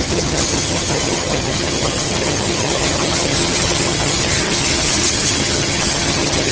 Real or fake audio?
fake